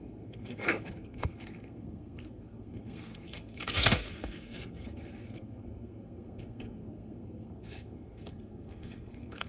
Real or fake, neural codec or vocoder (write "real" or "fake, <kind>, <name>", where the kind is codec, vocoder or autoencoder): fake, codec, SNAC